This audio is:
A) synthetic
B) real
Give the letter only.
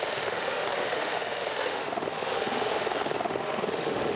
A